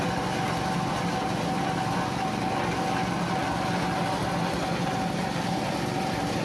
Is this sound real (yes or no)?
yes